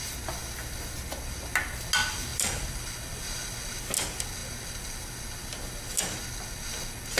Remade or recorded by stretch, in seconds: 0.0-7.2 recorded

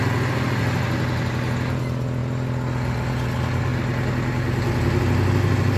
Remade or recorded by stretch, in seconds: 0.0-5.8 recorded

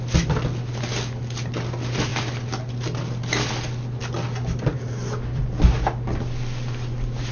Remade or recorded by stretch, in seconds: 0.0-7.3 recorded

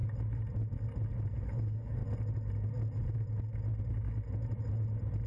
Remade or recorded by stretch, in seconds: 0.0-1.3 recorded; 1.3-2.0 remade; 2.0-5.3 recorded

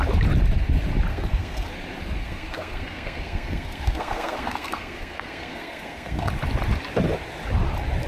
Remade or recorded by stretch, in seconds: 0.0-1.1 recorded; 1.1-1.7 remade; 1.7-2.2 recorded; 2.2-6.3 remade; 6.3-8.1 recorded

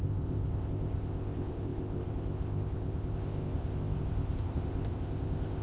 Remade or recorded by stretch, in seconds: 0.0-5.6 remade

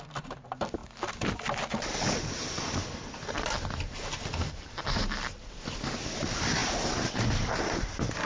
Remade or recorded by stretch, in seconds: 0.0-8.3 remade